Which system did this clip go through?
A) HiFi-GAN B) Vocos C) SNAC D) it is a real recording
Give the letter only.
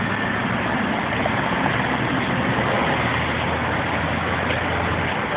D